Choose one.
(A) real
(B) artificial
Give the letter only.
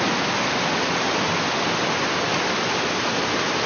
A